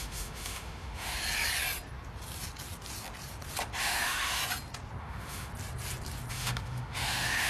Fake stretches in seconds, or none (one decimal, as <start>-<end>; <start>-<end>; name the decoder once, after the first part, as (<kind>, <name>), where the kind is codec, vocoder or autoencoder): 0.0-1.2 (autoencoder, DAC-VAE); 3.8-4.4; 5.0-5.5; 6.3-7.5